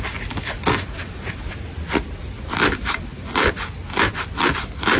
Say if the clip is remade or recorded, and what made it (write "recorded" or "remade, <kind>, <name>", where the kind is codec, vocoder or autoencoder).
recorded